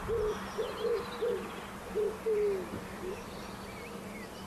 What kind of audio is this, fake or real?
real